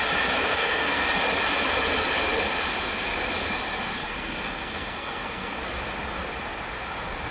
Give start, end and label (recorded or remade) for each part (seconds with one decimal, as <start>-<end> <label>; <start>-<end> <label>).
0.0-0.5 recorded; 0.5-1.1 remade; 1.1-4.0 recorded; 4.0-5.6 remade; 5.6-7.3 recorded